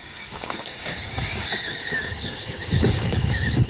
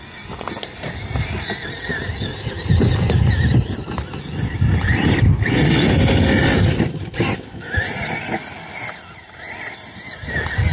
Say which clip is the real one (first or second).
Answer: second